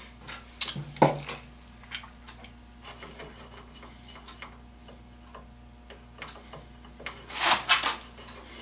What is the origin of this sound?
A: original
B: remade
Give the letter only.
A